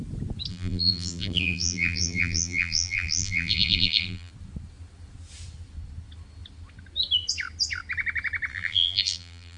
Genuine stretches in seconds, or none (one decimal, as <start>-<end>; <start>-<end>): 0.0-0.5; 4.3-8.5

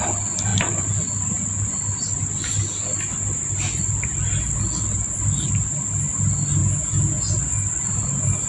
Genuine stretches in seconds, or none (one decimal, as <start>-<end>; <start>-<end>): 0.0-6.6; 7.3-8.5

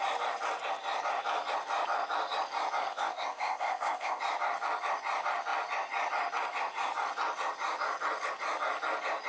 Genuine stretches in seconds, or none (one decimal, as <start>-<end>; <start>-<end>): 0.0-2.9; 4.2-9.3

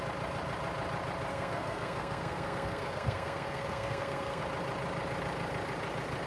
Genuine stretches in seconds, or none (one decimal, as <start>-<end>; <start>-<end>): 0.0-1.3; 4.4-6.3

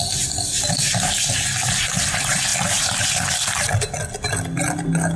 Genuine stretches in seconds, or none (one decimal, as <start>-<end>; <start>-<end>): 0.0-5.2

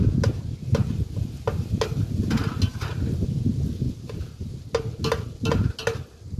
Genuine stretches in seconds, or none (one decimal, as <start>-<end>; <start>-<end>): 0.0-6.4

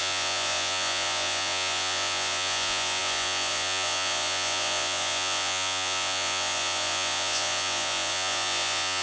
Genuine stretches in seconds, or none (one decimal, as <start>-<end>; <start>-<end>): none

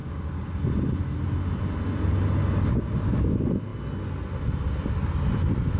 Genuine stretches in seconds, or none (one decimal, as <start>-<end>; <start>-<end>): 0.5-5.8